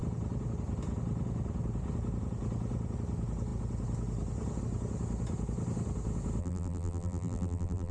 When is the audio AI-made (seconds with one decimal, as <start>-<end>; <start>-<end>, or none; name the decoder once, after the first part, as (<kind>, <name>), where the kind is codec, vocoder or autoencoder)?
6.4-7.9 (vocoder, BigVGAN v2)